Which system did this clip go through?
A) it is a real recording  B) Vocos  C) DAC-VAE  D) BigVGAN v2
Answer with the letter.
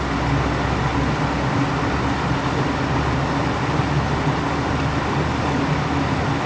A